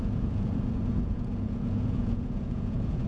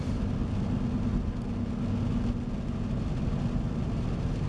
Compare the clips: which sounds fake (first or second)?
first